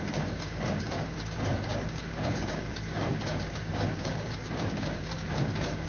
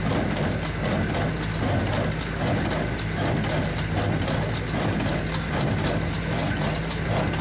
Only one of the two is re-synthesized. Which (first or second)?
first